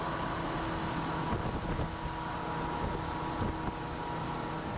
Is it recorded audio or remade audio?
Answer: recorded